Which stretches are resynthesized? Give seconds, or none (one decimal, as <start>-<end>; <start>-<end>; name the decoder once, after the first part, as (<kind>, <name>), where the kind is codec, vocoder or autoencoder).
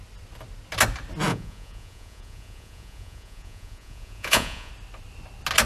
1.3-4.7 (vocoder, Vocos)